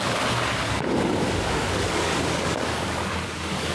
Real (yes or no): no